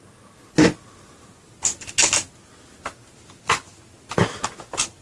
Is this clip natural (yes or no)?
yes